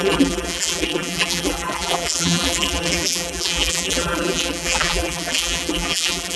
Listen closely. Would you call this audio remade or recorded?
remade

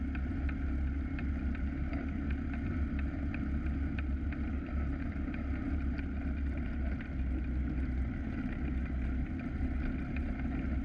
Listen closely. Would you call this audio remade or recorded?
recorded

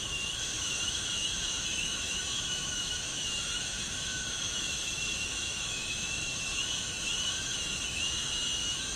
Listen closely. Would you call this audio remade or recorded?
remade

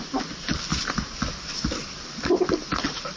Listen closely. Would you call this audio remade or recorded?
recorded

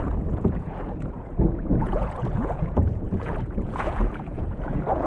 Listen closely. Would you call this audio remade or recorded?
remade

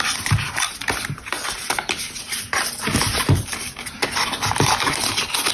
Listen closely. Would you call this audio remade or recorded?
remade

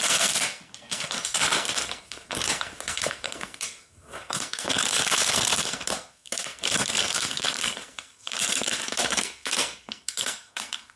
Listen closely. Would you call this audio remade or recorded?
remade